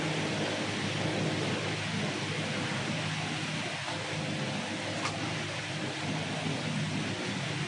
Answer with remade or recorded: recorded